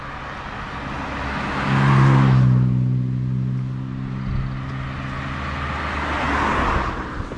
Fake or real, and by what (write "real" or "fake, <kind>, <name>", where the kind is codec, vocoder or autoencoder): real